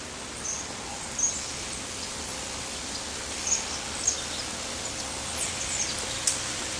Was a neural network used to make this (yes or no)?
no